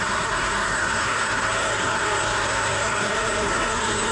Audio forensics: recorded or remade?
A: remade